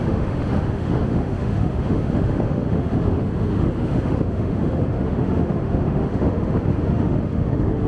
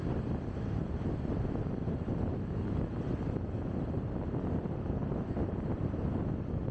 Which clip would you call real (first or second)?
second